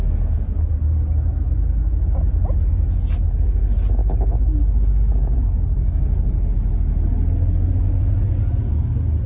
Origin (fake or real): real